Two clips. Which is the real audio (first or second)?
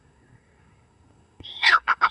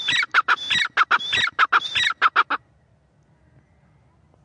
second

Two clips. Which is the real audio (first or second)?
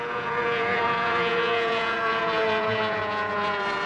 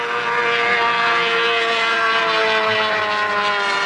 second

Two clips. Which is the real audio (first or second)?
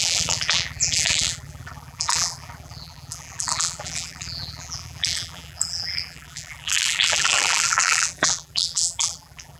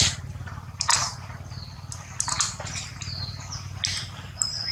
second